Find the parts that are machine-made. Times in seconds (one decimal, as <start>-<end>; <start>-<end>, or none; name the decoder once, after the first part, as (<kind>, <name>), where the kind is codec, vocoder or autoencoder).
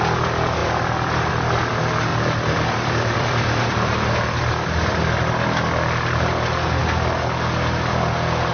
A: 0.6-1.3 (vocoder, BigVGAN v2); 2.1-4.9